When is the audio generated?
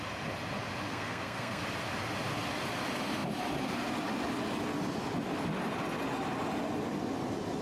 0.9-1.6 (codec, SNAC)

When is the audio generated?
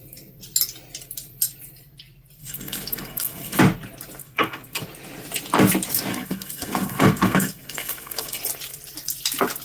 2.4-3.6 (codec, SNAC); 4.2-4.8; 6.1-8.4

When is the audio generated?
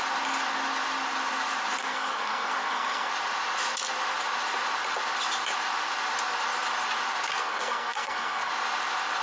1.8-3.1 (codec, SNAC); 7.4-8.5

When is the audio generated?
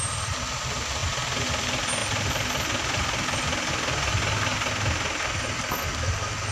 none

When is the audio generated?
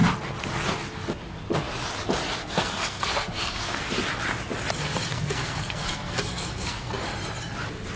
2.4-3.8 (codec, SNAC); 5.1-6.9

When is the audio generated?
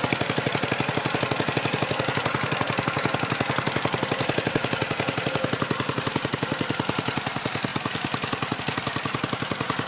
none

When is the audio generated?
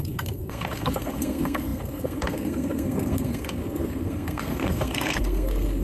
0.0-5.8 (codec, SNAC)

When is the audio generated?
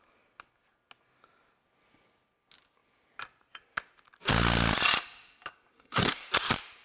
5.7-6.3 (codec, SNAC)